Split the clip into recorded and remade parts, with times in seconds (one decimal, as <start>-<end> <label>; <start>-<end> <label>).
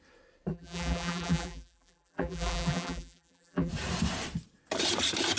0.0-0.5 recorded; 0.5-3.7 remade; 3.7-5.4 recorded